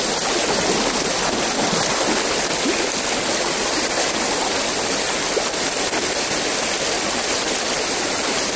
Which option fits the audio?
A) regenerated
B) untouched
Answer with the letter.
B